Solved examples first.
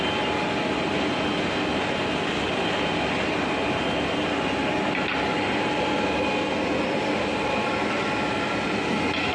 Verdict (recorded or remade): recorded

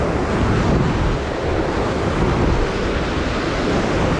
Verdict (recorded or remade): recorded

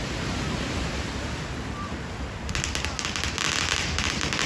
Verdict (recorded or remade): recorded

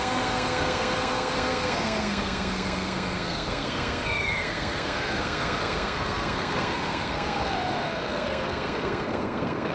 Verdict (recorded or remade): remade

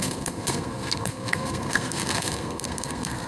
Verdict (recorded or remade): remade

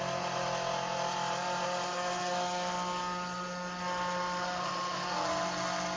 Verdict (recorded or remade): recorded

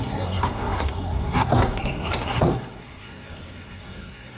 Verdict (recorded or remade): remade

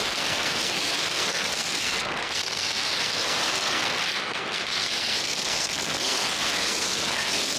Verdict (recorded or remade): remade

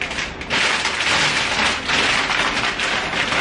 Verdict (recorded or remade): recorded